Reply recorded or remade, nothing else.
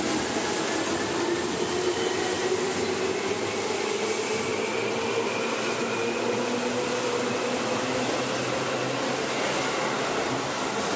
recorded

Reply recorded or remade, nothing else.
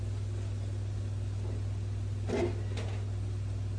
recorded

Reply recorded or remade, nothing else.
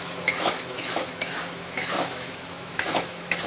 remade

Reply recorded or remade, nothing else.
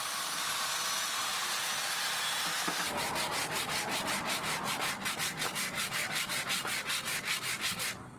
recorded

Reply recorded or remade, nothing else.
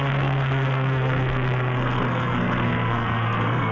remade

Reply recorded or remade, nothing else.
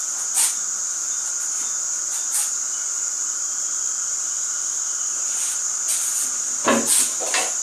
recorded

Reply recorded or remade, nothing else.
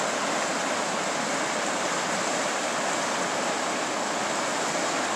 recorded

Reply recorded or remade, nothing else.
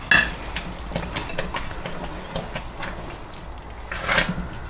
recorded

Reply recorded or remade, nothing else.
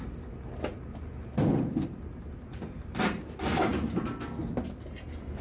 recorded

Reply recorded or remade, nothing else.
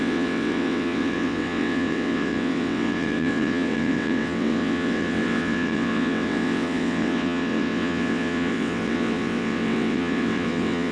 remade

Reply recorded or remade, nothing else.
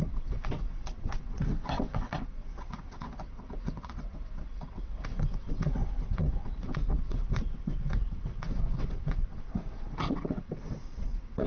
remade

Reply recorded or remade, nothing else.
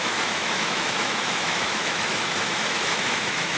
remade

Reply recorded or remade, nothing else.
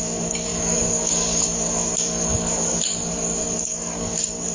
remade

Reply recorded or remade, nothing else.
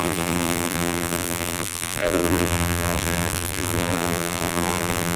remade